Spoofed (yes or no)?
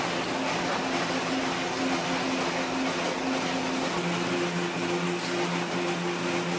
no